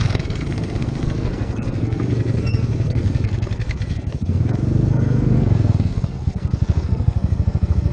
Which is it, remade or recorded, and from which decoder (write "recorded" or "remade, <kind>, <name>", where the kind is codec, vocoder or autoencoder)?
remade, codec, SNAC